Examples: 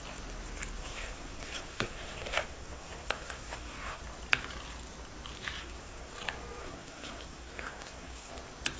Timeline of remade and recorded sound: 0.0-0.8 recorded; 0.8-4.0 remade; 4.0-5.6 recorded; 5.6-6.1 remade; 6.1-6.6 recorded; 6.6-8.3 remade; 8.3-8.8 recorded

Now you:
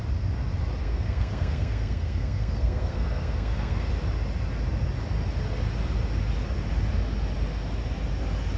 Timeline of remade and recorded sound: 0.0-0.8 recorded; 0.8-3.9 remade; 3.9-8.6 recorded

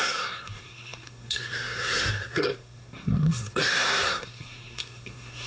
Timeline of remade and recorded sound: 0.0-5.5 remade

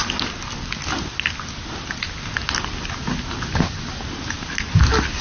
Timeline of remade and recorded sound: 0.0-5.2 recorded

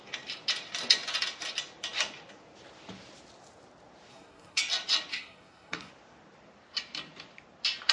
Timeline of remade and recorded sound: 0.0-4.1 recorded; 4.1-4.6 remade; 4.6-5.1 recorded; 5.1-5.9 remade; 5.9-7.9 recorded

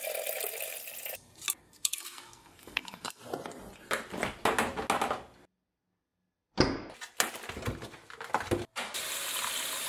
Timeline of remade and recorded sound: 0.0-1.6 recorded; 1.6-3.2 remade; 3.2-9.9 recorded

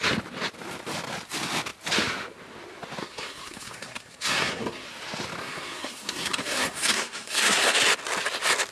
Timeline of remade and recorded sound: 0.0-3.0 recorded; 3.0-4.9 remade; 4.9-5.4 recorded; 5.4-7.7 remade; 7.7-8.7 recorded